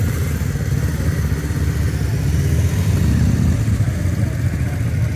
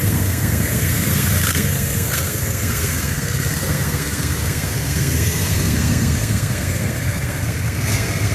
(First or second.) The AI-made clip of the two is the second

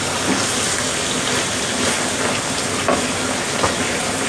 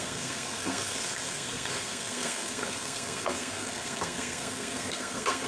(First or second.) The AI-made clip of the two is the second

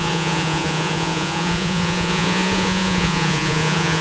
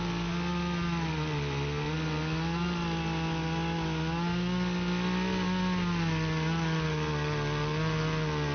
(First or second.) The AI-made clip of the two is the first